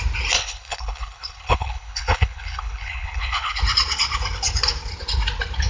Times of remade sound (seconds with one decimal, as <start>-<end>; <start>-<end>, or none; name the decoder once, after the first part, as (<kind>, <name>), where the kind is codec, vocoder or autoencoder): 0.4-3.6 (codec, HILCodec)